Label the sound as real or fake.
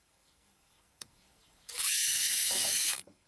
fake